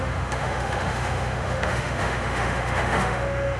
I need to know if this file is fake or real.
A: fake